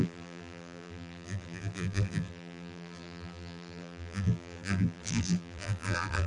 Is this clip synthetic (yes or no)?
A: yes